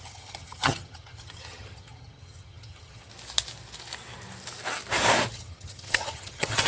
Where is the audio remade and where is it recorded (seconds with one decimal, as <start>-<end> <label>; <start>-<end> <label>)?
0.0-3.1 remade; 3.1-5.3 recorded; 5.3-6.7 remade